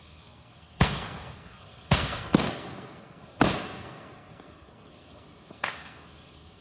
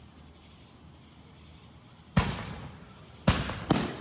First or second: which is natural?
second